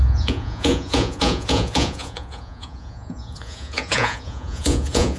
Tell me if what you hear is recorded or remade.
remade